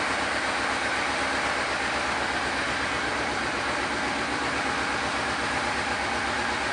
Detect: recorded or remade recorded